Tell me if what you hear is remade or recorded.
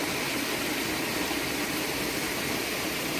recorded